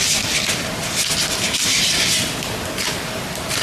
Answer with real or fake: real